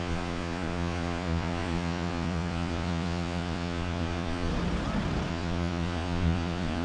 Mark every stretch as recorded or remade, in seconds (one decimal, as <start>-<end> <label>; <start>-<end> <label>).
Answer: 0.0-4.5 remade; 4.5-5.3 recorded; 5.3-6.8 remade